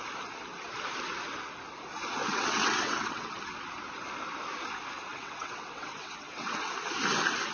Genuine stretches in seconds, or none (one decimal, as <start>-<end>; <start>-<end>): 0.0-2.2; 3.3-5.1; 6.7-7.5

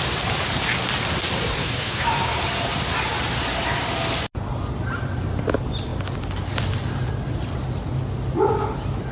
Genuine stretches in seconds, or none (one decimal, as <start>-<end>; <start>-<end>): 0.0-1.6; 2.4-9.1

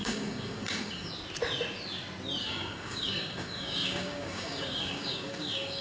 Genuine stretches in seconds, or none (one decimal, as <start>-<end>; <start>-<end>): 1.1-2.4

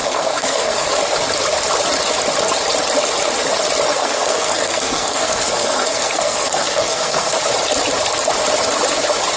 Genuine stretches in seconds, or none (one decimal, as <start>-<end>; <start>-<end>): 0.9-3.9; 7.3-9.4

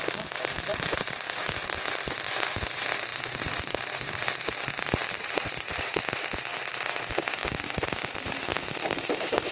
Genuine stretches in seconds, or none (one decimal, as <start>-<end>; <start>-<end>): 0.0-0.7; 1.8-3.1; 6.0-8.5

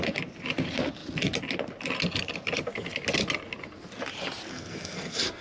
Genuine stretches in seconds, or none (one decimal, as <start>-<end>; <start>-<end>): 0.0-4.5

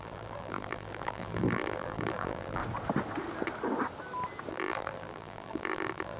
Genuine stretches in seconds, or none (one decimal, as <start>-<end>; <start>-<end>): 2.6-4.5

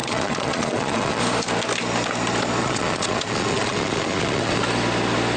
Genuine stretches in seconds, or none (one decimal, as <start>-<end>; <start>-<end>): 1.2-2.6; 4.6-5.4